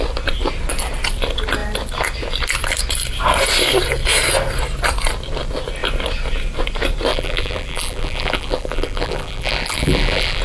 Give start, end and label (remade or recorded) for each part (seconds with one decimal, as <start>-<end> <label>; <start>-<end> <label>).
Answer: 0.0-7.1 recorded; 7.1-10.4 remade